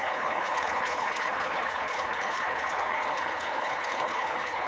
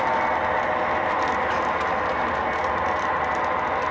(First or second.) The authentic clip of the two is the second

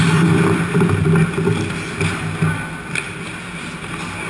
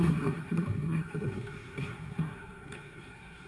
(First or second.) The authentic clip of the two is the first